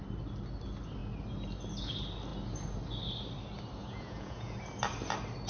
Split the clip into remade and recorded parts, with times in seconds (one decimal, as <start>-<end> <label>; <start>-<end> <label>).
0.0-3.8 recorded; 3.8-4.6 remade; 4.6-5.5 recorded